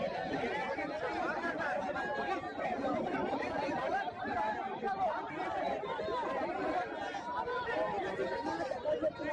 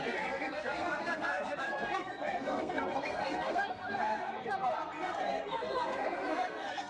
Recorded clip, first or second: first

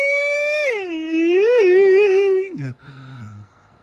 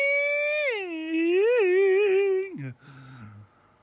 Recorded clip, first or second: second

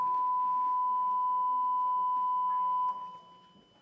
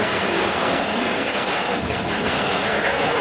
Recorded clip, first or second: first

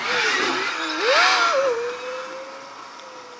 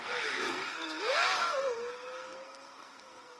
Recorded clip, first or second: first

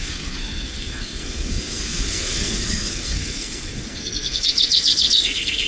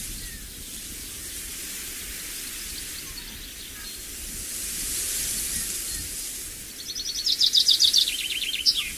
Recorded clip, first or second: second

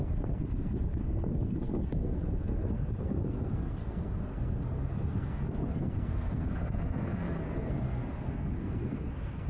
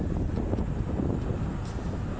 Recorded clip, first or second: second